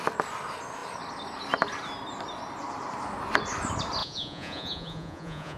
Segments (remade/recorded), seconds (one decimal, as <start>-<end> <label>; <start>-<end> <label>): 0.0-4.0 recorded; 4.0-5.6 remade